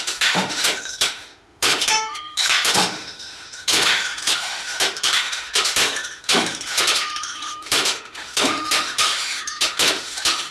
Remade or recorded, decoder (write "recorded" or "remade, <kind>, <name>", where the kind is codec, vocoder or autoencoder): remade, autoencoder, DAC-VAE